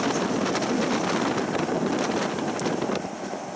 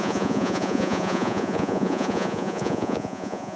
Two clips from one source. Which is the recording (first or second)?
first